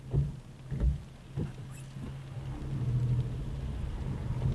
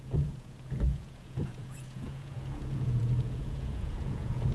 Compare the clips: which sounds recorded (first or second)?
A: first